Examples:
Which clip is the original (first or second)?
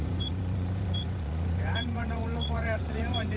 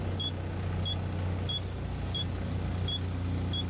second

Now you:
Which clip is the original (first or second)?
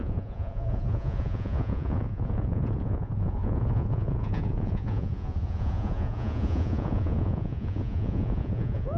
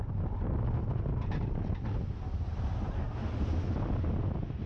second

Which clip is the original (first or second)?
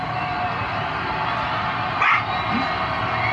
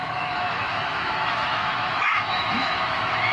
first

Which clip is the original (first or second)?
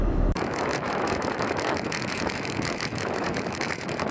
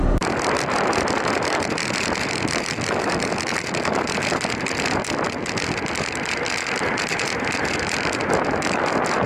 second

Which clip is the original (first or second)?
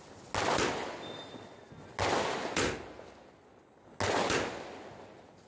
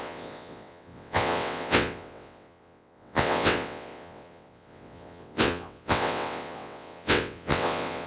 first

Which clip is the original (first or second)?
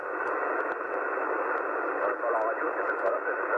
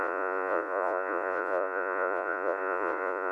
first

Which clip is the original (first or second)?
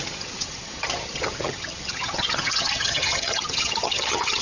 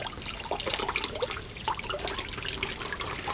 second